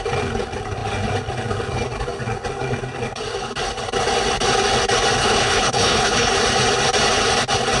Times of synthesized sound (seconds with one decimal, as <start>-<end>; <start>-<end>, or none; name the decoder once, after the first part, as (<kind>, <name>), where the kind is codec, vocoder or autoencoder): 5.2-6.3 (codec, HILCodec)